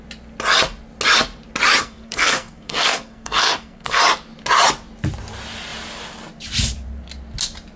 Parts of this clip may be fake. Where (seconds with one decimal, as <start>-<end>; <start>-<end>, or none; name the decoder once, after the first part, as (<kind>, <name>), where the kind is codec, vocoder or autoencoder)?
1.8-4.0 (codec, SNAC)